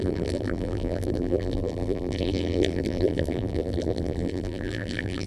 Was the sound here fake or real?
fake